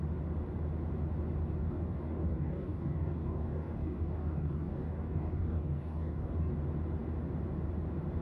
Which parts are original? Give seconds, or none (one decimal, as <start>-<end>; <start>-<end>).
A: 0.0-1.6; 6.5-8.2